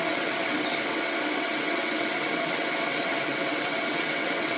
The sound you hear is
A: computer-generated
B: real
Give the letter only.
A